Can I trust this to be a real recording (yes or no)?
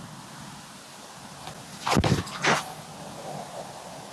yes